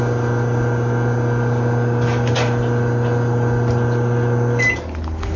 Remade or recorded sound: recorded